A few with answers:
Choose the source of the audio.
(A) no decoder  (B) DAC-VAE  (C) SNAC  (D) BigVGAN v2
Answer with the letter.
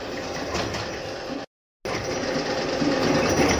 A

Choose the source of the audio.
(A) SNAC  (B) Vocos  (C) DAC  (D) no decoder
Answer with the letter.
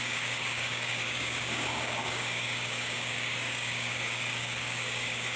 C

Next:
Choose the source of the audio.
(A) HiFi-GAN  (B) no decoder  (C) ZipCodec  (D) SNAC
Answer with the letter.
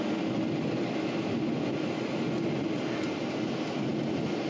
B